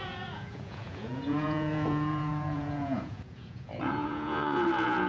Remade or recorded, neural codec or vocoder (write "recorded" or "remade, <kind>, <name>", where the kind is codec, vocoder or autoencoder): remade, vocoder, Vocos